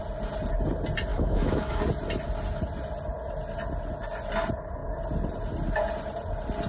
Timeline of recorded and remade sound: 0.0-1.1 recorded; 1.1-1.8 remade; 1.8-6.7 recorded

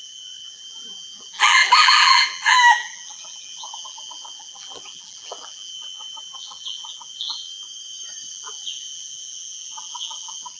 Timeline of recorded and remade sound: 0.0-7.4 remade; 7.4-8.3 recorded; 8.3-10.6 remade

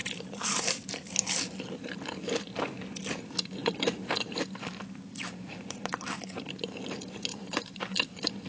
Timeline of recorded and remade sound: 0.0-1.1 remade; 1.1-3.6 recorded; 3.6-4.1 remade; 4.1-7.3 recorded; 7.3-7.8 remade; 7.8-8.5 recorded

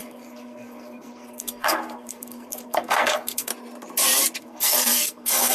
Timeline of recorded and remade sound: 0.0-3.5 remade; 3.5-4.4 recorded; 4.4-5.5 remade

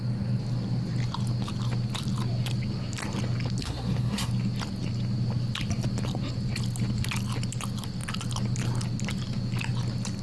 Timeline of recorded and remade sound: 0.0-3.6 recorded; 3.6-4.3 remade; 4.3-10.2 recorded

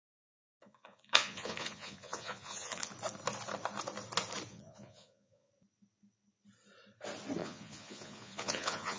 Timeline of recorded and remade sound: 0.0-2.9 remade; 2.9-4.5 recorded; 4.5-5.5 remade; 5.5-7.4 recorded; 7.4-9.0 remade